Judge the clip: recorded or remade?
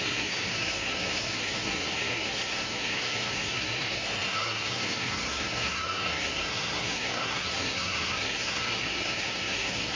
remade